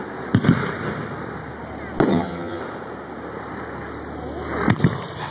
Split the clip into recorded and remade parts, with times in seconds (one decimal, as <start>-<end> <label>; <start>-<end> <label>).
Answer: 0.0-2.1 recorded; 2.1-2.6 remade; 2.6-5.3 recorded